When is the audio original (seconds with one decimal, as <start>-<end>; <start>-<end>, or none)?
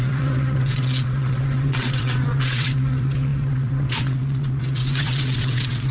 none